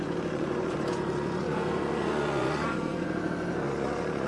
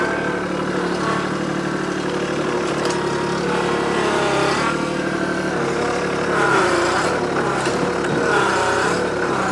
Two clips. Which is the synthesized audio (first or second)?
first